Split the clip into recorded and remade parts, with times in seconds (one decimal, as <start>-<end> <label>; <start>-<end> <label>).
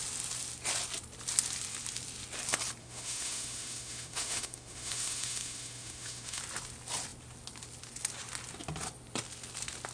0.0-2.8 recorded; 2.8-6.4 remade; 6.4-9.9 recorded